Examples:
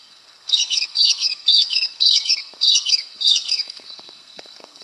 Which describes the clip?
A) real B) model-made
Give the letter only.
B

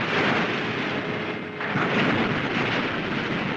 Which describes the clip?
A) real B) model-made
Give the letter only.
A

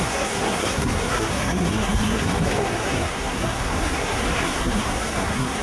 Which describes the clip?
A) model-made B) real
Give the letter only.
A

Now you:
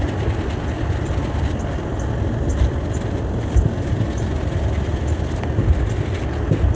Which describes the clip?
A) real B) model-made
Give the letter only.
A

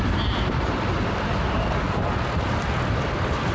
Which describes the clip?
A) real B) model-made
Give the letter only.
A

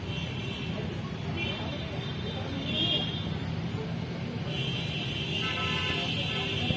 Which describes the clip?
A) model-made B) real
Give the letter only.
B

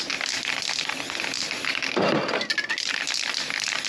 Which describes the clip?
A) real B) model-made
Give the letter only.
A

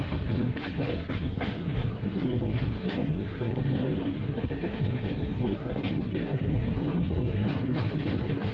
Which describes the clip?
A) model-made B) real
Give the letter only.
A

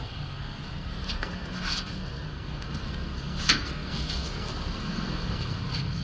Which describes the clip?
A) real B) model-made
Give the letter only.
B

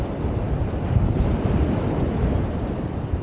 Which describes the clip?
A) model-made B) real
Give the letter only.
B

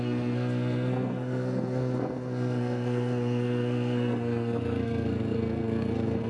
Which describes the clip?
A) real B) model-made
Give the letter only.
B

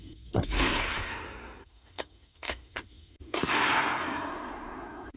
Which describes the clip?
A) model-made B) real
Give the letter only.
A